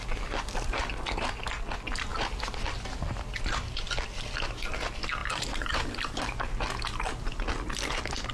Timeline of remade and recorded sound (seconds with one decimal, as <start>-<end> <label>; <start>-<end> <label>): 0.0-5.2 recorded; 5.2-6.4 remade; 6.4-8.3 recorded